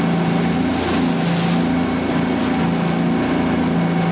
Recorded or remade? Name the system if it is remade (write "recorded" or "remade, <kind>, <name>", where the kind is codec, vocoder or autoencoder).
recorded